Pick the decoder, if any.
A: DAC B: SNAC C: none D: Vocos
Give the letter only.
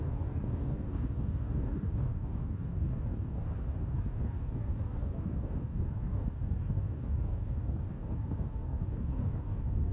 A